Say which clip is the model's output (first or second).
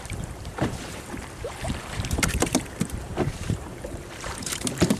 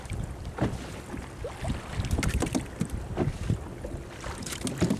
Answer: first